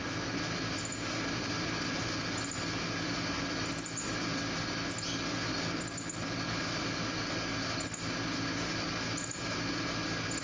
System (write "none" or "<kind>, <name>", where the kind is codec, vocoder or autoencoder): none